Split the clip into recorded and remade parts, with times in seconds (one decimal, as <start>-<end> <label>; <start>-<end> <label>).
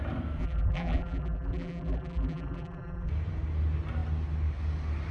0.0-0.4 recorded; 0.4-3.1 remade; 3.1-5.1 recorded